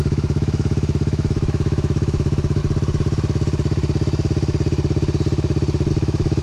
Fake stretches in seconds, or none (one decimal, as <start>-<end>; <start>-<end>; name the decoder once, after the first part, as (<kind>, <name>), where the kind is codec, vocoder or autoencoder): 0.0-2.6 (autoencoder, DAC-VAE); 5.9-6.4